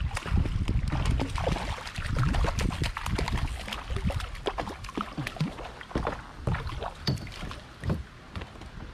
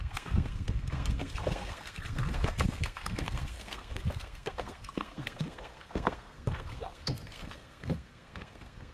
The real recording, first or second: first